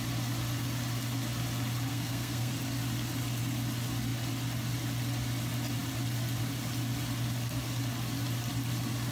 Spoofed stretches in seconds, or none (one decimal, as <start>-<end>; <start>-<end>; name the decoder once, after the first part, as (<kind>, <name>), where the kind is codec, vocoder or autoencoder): 1.9-2.5 (codec, SNAC)